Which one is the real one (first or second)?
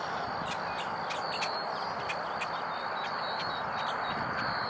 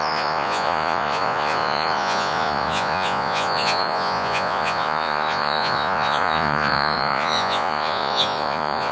first